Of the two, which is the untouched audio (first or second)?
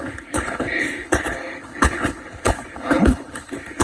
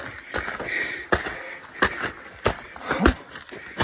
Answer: second